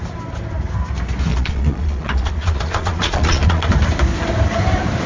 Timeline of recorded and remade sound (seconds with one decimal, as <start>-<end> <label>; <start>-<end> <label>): 0.0-1.3 recorded; 1.3-3.7 remade; 3.7-5.1 recorded